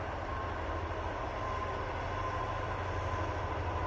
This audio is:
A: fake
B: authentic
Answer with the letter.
B